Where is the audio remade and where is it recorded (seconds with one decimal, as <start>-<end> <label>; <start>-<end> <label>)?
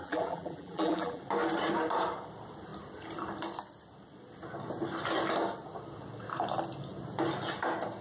0.0-1.2 remade; 1.2-8.0 recorded